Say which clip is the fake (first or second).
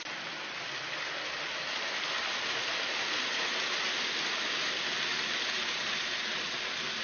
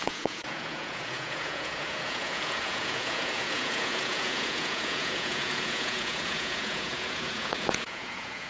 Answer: second